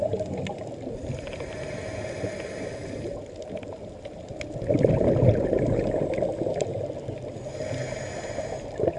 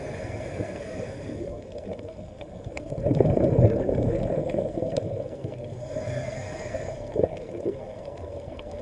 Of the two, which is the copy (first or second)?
second